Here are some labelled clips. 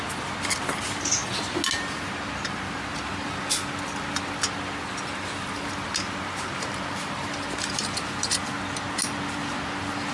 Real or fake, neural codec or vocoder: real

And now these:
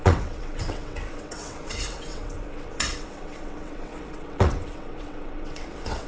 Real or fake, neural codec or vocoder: fake, vocoder, WaveNeXt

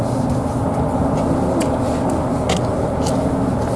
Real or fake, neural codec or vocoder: real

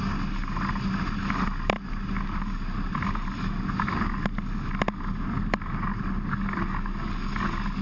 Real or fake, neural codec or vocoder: real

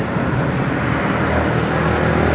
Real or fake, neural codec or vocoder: real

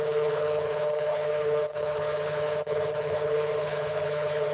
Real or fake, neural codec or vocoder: fake, codec, HILCodec